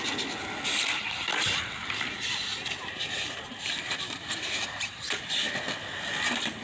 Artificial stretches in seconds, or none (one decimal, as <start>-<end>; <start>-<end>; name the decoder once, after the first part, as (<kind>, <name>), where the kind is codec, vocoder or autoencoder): 1.3-5.3 (vocoder, BigVGAN v2)